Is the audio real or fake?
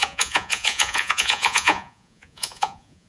fake